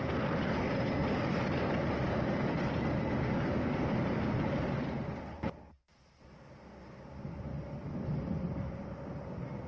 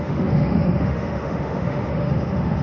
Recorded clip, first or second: first